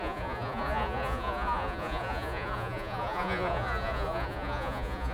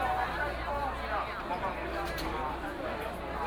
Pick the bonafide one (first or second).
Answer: second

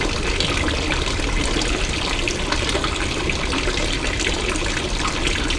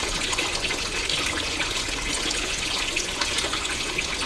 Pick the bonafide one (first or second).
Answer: first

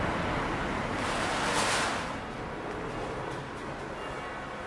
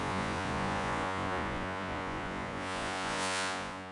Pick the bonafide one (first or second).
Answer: first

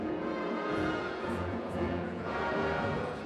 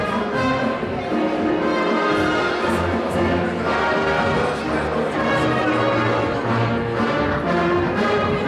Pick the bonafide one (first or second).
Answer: second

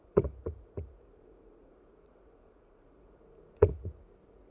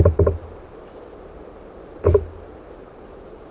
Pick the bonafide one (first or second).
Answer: second